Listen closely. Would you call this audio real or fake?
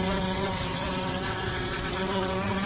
fake